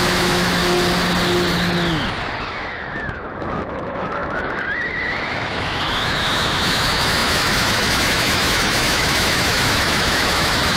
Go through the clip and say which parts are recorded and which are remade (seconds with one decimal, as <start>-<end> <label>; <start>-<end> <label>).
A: 0.0-0.6 remade; 0.6-2.4 recorded; 2.4-10.8 remade